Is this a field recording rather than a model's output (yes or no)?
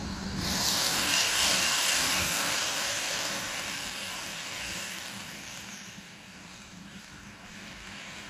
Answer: no